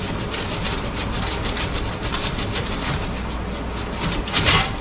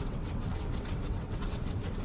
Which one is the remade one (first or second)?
second